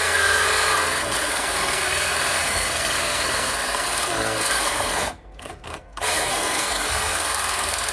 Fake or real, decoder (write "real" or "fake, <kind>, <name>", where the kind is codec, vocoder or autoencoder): fake, codec, SNAC